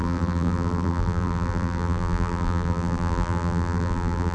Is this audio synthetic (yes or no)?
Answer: yes